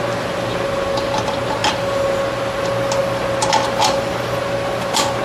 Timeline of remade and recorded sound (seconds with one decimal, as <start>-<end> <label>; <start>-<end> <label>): 0.0-5.2 recorded